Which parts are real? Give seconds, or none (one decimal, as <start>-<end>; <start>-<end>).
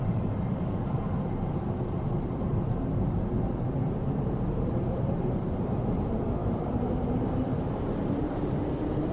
none